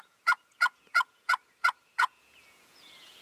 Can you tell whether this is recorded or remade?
remade